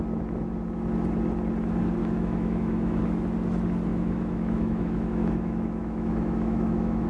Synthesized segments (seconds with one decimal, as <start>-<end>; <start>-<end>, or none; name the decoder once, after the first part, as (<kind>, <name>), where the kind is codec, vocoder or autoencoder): 2.0-3.0 (autoencoder, DAC-VAE); 3.9-7.1

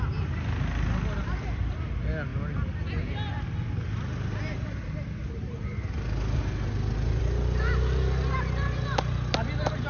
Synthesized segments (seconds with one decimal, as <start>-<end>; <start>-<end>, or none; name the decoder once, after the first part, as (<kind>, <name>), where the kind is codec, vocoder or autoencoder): none